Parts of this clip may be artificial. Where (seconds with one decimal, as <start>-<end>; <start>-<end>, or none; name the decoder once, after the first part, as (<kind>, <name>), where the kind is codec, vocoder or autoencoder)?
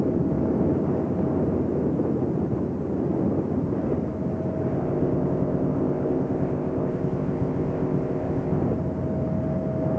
4.7-8.6 (codec, ZipCodec)